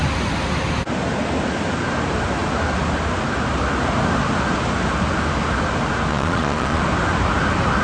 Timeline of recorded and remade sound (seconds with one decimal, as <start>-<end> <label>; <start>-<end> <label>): 0.0-6.1 recorded; 6.1-6.8 remade; 6.8-7.8 recorded